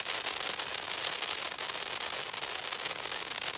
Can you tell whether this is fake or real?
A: real